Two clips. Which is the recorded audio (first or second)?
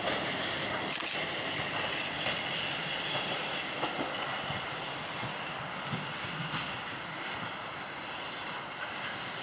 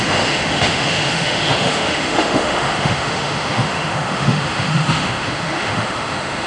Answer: first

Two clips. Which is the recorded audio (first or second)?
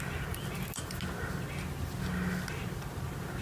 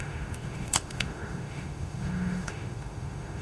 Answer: first